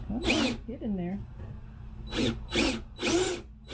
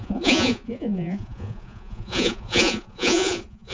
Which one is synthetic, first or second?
second